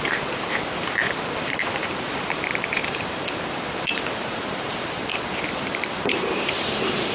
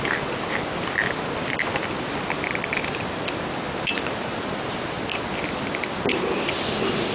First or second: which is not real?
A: first